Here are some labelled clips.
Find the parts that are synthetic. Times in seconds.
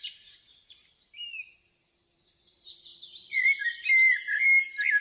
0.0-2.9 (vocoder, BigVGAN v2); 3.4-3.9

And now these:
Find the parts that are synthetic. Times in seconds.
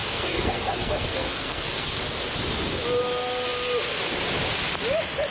0.0-2.0 (codec, SNAC)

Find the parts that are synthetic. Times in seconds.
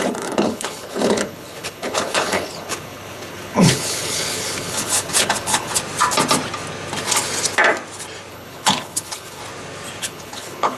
0.0-5.7 (codec, HILCodec); 8.3-9.4; 10.0-10.8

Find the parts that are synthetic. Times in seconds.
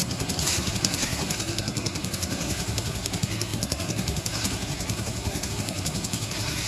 0.0-6.7 (codec, SNAC)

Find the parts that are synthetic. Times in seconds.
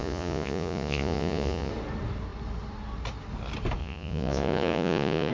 0.0-1.7 (vocoder, Vocos); 3.8-5.3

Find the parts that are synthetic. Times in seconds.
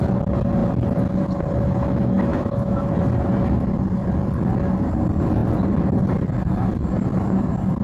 2.3-2.9 (autoencoder, DAC-VAE)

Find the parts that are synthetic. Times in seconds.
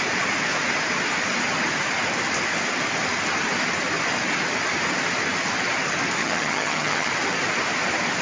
6.2-7.1 (vocoder, HiFi-GAN)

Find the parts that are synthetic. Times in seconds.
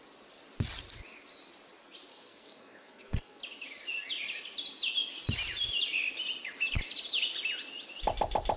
2.1-3.4 (codec, SNAC)